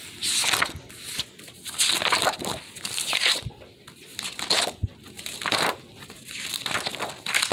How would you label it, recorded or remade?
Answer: recorded